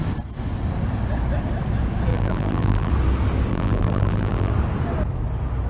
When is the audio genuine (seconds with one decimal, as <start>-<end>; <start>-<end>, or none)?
0.0-2.1; 2.9-3.5; 4.5-5.7